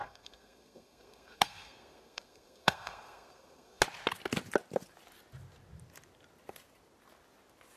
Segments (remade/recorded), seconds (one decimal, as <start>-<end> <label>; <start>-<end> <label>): 0.0-3.8 remade; 3.8-7.8 recorded